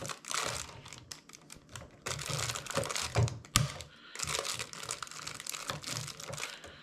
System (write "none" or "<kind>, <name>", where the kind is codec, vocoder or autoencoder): none